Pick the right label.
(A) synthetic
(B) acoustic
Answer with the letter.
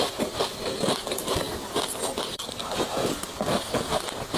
B